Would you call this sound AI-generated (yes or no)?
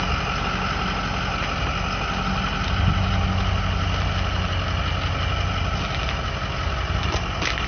no